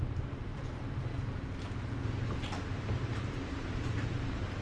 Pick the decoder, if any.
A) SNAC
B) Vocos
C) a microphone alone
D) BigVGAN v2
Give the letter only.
D